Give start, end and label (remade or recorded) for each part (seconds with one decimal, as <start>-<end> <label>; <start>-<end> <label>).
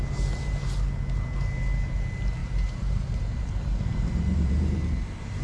0.0-2.4 recorded; 2.4-5.4 remade